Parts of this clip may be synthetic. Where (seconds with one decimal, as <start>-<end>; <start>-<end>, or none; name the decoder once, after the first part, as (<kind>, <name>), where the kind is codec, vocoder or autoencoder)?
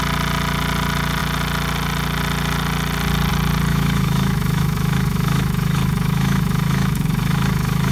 3.7-7.9 (autoencoder, DAC-VAE)